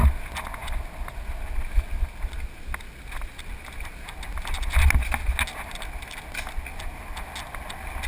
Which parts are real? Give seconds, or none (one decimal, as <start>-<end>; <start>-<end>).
0.0-8.1